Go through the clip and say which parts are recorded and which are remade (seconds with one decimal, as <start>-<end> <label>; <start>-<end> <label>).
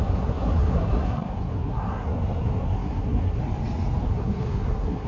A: 0.0-3.4 remade; 3.4-4.0 recorded; 4.0-5.1 remade